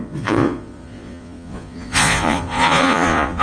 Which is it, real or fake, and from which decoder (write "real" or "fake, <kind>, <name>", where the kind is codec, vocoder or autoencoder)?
fake, vocoder, Vocos